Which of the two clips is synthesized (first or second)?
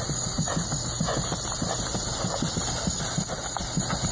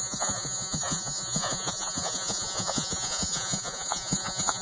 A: second